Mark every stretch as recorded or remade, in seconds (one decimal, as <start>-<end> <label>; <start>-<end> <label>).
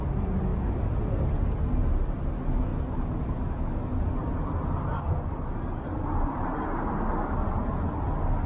0.0-0.5 recorded; 0.5-1.1 remade; 1.1-8.5 recorded